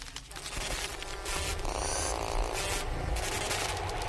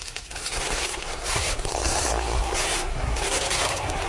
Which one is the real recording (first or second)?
first